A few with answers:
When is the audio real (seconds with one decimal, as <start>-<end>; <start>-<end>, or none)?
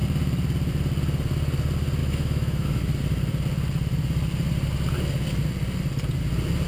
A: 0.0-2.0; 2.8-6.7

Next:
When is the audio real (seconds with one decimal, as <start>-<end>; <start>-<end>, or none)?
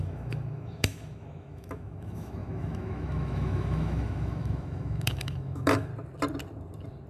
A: 5.9-7.1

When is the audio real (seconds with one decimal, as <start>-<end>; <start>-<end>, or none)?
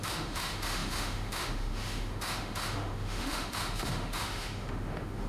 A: none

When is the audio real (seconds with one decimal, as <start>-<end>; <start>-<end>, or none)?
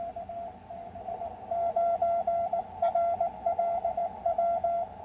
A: 0.0-5.0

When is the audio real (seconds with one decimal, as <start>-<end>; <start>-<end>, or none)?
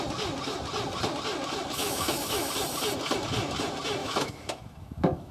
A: 0.0-1.8; 2.5-4.0